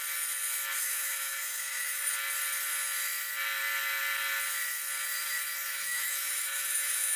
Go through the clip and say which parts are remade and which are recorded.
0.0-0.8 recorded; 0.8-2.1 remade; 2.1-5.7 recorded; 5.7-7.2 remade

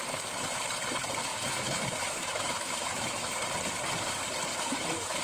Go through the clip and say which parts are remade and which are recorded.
0.0-1.3 recorded; 1.3-3.3 remade; 3.3-4.5 recorded; 4.5-5.2 remade

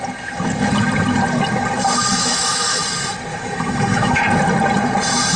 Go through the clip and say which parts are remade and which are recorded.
0.0-2.1 recorded; 2.1-2.8 remade; 2.8-3.3 recorded; 3.3-4.2 remade; 4.2-5.4 recorded